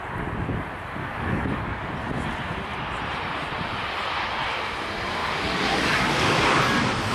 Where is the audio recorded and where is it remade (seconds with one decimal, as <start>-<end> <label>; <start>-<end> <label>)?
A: 0.0-1.0 recorded; 1.0-1.9 remade; 1.9-5.2 recorded; 5.2-6.6 remade; 6.6-7.1 recorded